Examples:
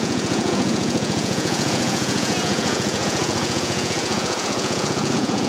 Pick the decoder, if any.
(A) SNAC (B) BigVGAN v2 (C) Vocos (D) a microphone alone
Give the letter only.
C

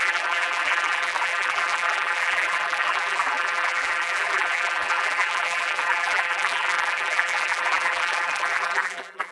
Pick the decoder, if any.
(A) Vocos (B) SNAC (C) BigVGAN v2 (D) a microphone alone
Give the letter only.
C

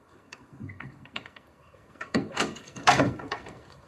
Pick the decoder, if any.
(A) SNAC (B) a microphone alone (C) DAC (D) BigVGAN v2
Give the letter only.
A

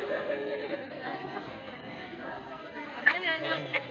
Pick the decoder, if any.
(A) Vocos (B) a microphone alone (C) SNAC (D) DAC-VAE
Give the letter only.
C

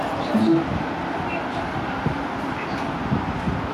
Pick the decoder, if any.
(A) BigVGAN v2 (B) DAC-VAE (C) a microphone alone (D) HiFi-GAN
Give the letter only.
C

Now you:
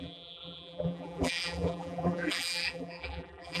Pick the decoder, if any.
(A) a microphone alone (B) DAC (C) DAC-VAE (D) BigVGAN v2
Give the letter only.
D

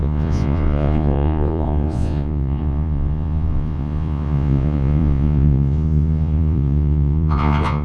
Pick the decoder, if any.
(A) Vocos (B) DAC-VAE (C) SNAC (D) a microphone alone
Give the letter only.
A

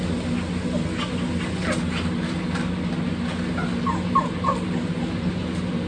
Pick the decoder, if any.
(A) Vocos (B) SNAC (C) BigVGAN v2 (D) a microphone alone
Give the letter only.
D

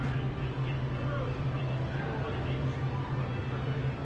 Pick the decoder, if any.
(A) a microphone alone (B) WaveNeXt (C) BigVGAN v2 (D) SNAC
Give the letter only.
A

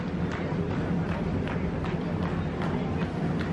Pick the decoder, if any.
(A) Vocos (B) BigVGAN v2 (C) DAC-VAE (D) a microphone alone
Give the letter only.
D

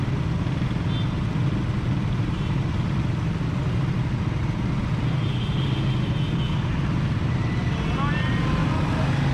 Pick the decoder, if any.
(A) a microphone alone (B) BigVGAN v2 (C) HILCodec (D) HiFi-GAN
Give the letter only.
A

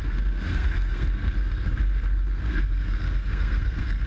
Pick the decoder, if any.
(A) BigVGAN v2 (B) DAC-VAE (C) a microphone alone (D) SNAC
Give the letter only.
D